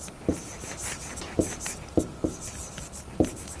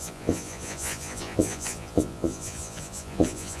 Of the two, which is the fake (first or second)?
second